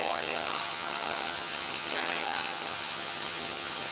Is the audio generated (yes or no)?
yes